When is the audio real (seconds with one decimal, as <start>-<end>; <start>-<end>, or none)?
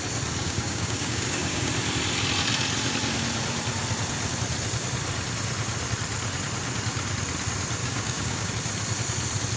0.0-0.4; 1.7-7.8; 8.5-9.6